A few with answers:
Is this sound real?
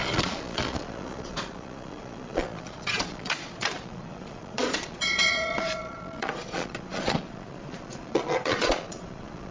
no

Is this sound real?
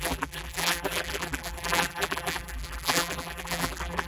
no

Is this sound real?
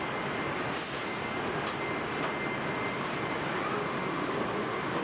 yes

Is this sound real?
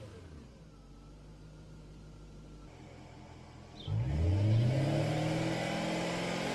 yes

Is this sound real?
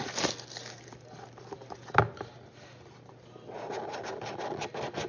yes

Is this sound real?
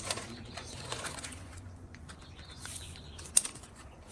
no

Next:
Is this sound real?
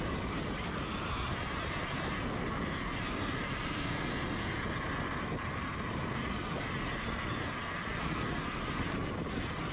yes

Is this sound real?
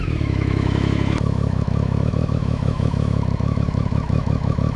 no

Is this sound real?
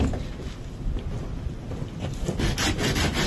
yes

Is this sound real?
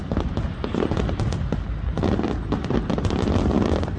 yes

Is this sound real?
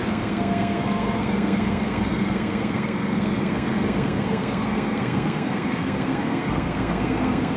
no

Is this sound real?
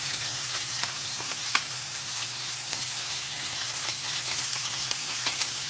no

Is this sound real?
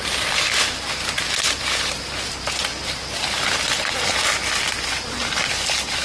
yes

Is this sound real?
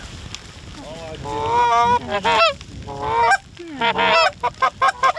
yes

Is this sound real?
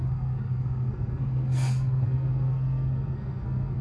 no